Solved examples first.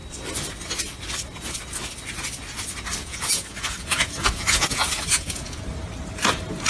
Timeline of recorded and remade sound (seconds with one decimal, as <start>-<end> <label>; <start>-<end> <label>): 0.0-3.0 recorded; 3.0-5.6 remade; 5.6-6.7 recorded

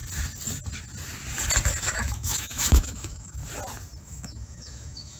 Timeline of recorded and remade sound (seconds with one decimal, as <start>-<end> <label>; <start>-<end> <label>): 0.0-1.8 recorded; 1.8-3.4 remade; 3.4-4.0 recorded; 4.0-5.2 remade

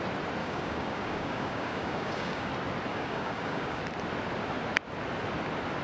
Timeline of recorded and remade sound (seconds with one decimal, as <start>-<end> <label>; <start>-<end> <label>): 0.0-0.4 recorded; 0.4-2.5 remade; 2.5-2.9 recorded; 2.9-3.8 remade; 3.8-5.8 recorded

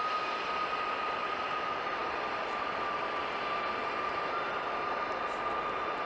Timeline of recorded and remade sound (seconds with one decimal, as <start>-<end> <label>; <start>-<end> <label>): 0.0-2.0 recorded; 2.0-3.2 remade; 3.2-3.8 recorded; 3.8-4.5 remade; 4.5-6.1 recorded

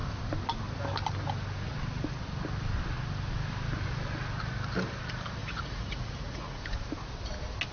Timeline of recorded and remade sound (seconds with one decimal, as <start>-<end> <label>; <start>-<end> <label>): 0.0-5.4 recorded; 5.4-6.6 remade; 6.6-7.7 recorded

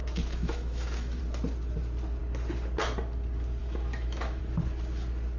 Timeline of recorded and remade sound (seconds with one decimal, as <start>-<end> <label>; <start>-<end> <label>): 0.0-1.2 remade; 1.2-3.6 recorded; 3.6-4.4 remade; 4.4-5.4 recorded

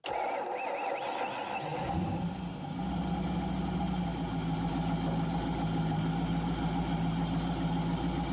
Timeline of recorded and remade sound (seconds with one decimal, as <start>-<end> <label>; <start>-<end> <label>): 0.0-8.3 recorded

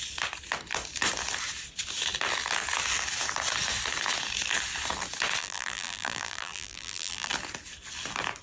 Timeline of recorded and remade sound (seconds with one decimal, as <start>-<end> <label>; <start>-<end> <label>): 0.0-5.4 recorded; 5.4-7.3 remade; 7.3-8.4 recorded